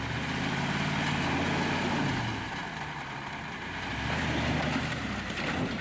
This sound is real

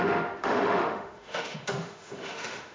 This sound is fake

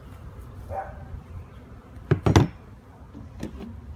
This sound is real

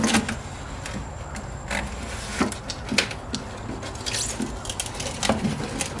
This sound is real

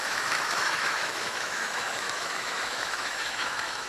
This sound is fake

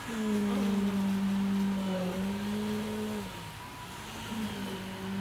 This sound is real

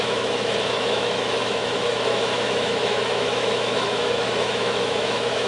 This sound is fake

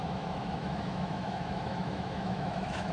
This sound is fake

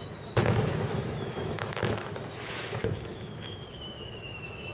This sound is fake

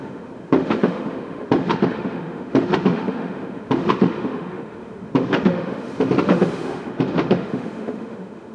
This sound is fake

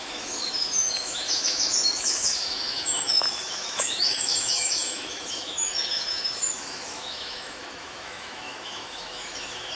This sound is fake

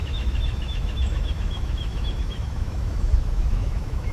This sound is fake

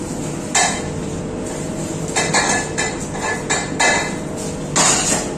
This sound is real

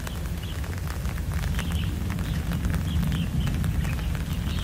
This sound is real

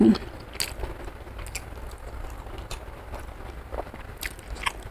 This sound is real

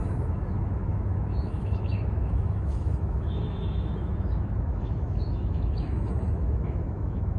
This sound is fake